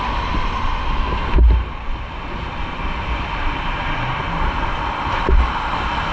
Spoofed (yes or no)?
no